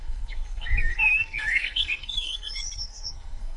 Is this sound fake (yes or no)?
yes